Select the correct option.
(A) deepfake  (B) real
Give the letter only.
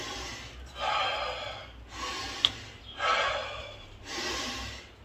B